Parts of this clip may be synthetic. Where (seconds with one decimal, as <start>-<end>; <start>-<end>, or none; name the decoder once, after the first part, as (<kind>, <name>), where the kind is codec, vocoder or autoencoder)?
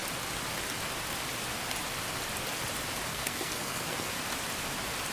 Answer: 3.1-4.2 (codec, SNAC)